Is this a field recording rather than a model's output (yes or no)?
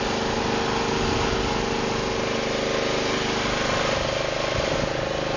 yes